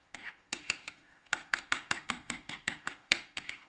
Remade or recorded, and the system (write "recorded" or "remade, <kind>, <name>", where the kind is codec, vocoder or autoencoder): remade, autoencoder, DAC-VAE